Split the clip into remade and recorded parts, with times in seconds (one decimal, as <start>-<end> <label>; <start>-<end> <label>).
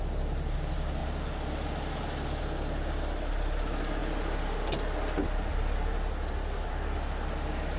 0.0-7.8 recorded